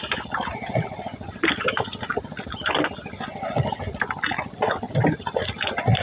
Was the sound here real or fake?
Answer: real